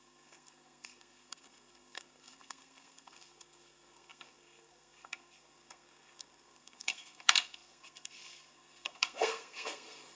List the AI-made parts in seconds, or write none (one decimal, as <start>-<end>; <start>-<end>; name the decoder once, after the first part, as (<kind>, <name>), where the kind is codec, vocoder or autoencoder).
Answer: 0.0-10.1 (codec, SNAC)